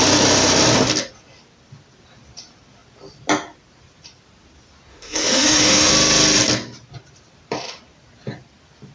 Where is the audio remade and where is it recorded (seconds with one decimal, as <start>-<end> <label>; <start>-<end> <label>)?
0.0-4.9 recorded; 4.9-5.9 remade; 5.9-8.9 recorded